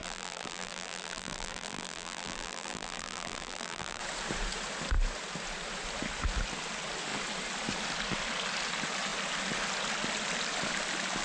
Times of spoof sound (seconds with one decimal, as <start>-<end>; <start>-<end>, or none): 0.0-4.0